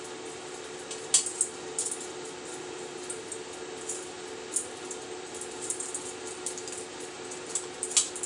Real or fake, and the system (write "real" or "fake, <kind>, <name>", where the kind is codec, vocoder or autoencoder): real